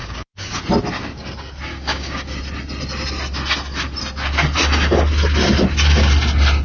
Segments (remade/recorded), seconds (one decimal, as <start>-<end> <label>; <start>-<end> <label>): 0.0-0.6 remade; 0.6-1.7 recorded; 1.7-2.4 remade; 2.4-6.6 recorded